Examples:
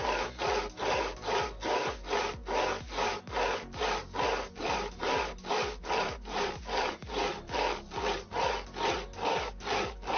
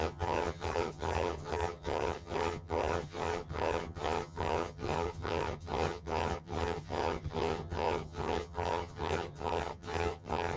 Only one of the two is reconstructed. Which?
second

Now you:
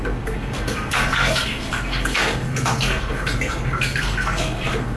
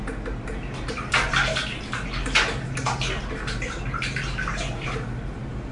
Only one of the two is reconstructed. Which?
first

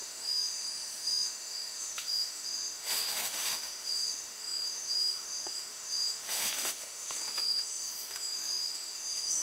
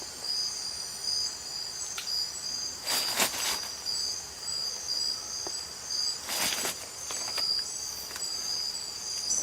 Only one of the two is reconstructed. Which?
first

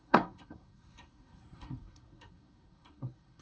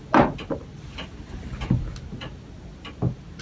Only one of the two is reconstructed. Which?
first